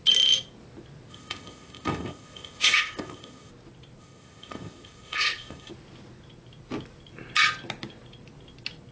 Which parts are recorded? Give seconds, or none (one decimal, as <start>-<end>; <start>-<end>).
0.0-1.1; 3.5-4.0; 5.7-8.9